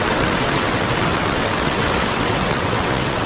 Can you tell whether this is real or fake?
fake